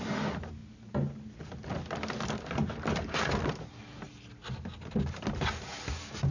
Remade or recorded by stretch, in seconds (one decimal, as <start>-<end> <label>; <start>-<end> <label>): 0.0-6.3 recorded